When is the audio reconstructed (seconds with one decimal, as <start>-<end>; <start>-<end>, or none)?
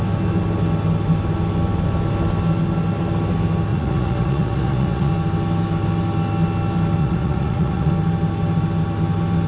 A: 3.7-5.1; 7.0-7.9